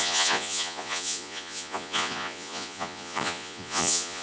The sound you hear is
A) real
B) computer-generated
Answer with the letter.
B